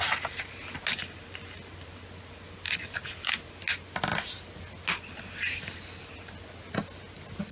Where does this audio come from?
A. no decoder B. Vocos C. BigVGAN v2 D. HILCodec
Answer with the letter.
A